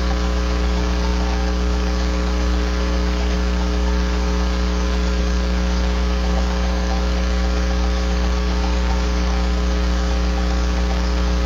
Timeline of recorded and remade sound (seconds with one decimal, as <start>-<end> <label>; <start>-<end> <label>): 0.0-11.5 remade

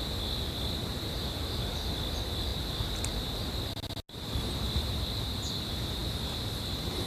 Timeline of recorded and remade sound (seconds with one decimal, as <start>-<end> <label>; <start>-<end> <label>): 0.0-7.1 recorded

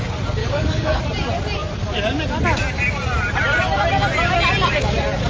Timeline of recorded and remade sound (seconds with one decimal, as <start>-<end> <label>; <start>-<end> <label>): 0.0-0.4 recorded; 0.4-1.0 remade; 1.0-5.3 recorded